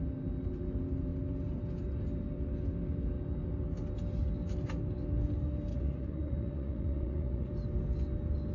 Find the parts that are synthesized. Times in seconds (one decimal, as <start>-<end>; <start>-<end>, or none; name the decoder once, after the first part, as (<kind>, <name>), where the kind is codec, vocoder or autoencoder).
5.7-7.5 (vocoder, Vocos)